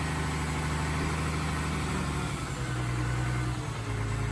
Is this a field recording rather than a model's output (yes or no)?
yes